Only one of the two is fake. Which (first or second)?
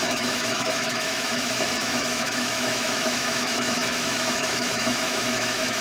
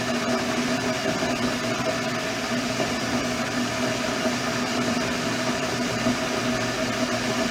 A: first